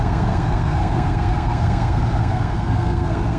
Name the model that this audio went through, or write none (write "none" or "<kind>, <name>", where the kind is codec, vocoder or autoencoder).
codec, SNAC